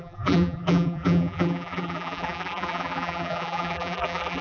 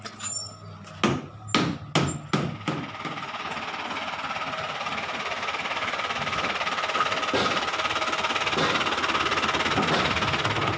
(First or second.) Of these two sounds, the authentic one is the second